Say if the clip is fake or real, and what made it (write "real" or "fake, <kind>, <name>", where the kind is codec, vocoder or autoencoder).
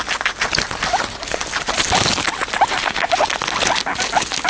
real